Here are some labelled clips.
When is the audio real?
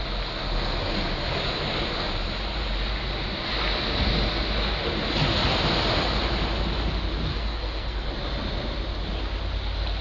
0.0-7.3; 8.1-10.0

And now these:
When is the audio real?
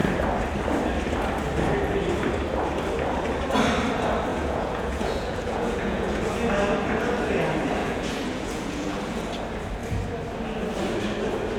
0.0-4.3; 6.2-7.8; 9.2-11.6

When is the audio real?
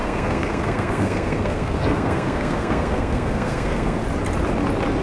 4.0-5.0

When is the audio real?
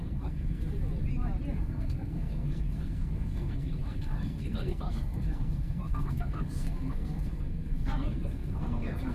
0.6-1.6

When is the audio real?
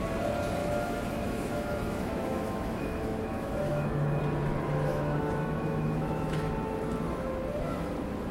0.0-0.6; 4.2-4.9; 6.5-8.3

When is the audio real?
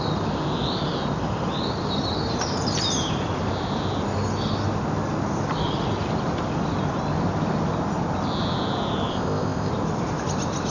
0.0-9.1; 9.7-10.7